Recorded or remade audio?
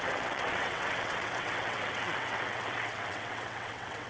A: remade